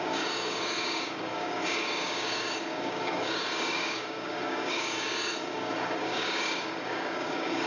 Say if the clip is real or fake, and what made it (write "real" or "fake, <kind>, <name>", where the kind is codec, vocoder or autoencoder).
fake, codec, DAC